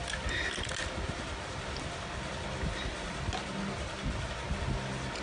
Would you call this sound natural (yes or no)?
yes